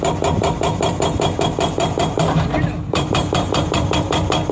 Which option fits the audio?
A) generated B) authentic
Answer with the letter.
A